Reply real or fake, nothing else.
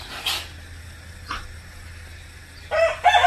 real